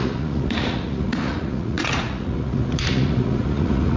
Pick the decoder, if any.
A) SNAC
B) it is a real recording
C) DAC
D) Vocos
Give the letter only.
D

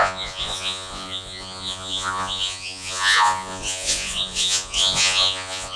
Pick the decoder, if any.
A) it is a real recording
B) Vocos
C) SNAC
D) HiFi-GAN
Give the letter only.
B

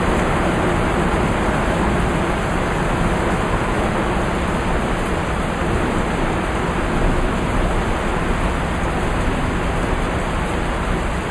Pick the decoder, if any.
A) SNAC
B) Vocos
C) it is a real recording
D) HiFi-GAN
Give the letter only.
C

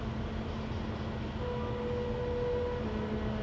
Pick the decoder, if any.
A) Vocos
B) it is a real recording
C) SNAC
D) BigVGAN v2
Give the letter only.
B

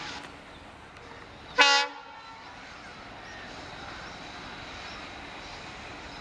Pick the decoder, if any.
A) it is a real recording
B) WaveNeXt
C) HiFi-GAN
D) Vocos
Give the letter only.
A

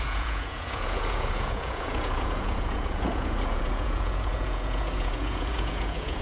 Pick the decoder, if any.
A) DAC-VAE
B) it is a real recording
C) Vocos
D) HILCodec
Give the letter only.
C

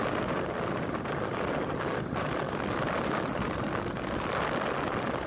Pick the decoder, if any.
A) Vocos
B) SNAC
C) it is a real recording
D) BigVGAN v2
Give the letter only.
C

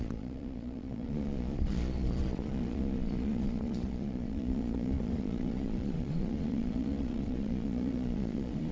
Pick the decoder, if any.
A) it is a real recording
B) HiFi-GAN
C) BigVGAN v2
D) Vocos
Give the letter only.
D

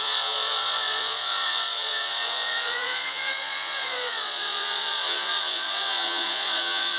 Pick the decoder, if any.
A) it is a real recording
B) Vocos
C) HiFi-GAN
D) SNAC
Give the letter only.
B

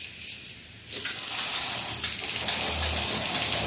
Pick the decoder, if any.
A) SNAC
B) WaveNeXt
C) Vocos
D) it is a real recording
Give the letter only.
D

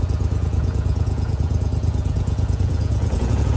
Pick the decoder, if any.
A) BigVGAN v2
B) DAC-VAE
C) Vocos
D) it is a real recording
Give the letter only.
C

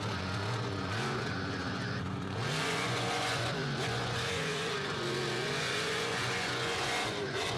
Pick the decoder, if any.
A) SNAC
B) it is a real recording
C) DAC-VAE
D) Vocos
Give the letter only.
D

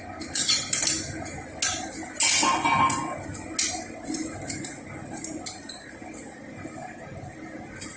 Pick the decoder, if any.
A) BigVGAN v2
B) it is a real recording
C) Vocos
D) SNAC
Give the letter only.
B